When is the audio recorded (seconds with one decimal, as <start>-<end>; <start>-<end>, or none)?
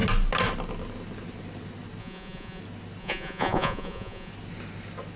0.0-2.0; 2.6-3.0; 4.3-5.2